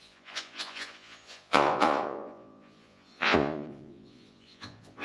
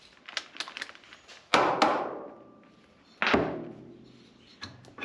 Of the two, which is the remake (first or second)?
first